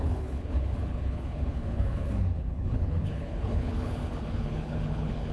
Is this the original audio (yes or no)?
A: no